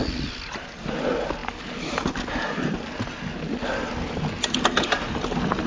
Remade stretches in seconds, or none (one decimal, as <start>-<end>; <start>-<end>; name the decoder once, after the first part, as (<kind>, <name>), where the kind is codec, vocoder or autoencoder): none